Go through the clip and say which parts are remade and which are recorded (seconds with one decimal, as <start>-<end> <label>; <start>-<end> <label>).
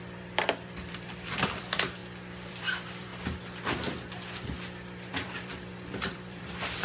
0.0-2.0 remade; 2.0-2.5 recorded; 2.5-3.1 remade; 3.1-5.1 recorded; 5.1-6.8 remade